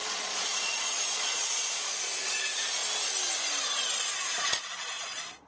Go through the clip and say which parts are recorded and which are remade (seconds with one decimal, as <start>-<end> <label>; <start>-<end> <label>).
0.0-2.8 remade; 2.8-4.0 recorded; 4.0-5.5 remade